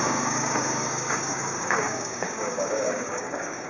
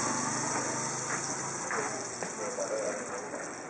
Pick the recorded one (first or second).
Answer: second